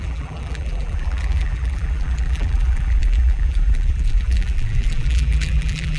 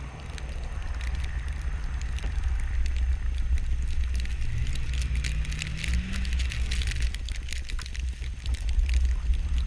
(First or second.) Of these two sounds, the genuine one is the second